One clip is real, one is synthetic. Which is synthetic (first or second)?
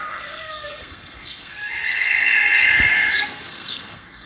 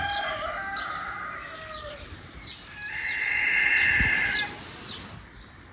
first